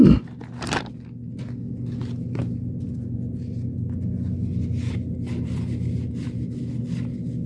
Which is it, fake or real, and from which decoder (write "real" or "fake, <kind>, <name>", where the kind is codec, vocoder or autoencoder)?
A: real